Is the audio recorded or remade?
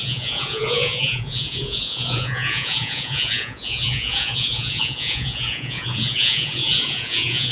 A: remade